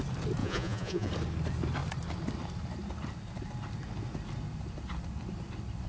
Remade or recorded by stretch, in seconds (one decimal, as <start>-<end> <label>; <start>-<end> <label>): 0.0-0.4 recorded; 0.4-1.1 remade; 1.1-5.9 recorded